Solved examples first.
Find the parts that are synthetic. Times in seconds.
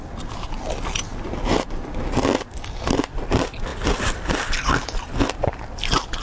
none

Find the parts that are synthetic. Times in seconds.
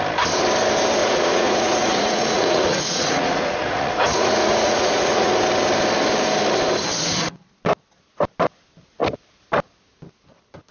1.0-5.3 (vocoder, Vocos)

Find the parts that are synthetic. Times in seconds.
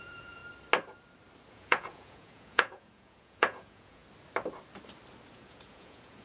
0.0-0.4 (vocoder, Vocos); 1.5-4.0; 5.3-6.2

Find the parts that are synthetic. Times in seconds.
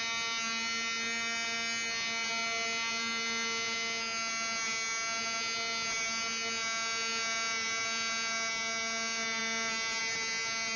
none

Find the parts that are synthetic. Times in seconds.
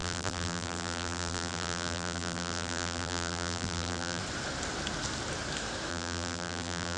0.0-4.2 (vocoder, BigVGAN v2); 5.9-7.0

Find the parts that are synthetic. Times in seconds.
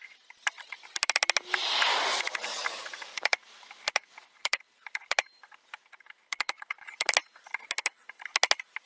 4.4-5.0 (vocoder, BigVGAN v2)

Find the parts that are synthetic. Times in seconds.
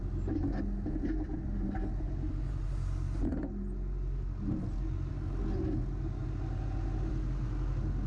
none